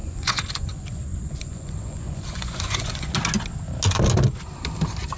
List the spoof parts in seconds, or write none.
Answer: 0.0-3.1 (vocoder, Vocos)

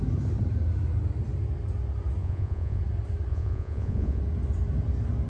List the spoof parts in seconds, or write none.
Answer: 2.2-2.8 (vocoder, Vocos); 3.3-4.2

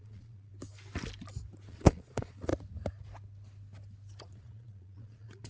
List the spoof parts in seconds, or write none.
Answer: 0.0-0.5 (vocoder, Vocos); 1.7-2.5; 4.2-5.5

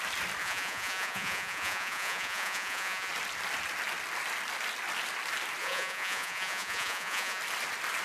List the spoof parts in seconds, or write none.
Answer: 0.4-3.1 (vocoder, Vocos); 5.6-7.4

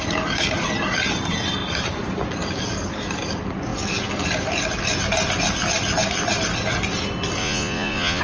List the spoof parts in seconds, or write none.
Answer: 7.4-8.2 (vocoder, Vocos)